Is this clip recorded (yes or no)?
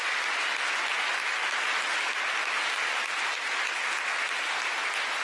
yes